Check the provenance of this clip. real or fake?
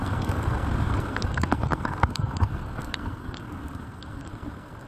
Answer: fake